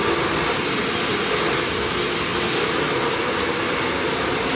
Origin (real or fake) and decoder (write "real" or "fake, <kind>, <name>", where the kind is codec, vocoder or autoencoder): real